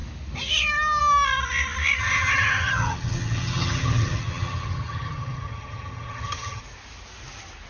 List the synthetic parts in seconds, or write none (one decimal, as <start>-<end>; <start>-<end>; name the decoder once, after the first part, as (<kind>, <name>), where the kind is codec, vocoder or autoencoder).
2.0-6.6 (vocoder, HiFi-GAN)